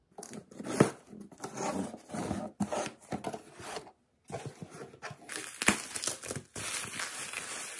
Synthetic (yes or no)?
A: no